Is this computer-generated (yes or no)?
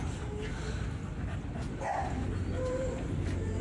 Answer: no